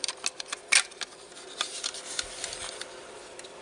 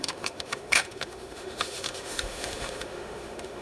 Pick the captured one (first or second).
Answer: first